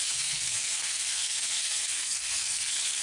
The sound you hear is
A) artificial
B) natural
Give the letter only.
A